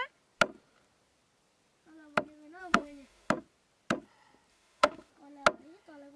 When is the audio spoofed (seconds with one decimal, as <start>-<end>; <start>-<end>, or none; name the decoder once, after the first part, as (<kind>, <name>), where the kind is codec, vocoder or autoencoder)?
2.6-3.3 (autoencoder, DAC-VAE); 4.5-5.1